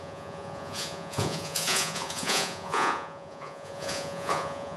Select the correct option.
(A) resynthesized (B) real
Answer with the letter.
A